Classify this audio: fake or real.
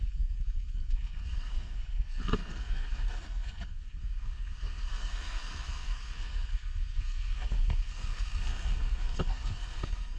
fake